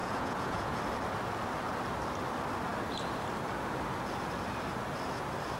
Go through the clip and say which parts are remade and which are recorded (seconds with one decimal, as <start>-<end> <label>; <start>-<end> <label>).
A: 0.0-0.8 remade; 0.8-5.6 recorded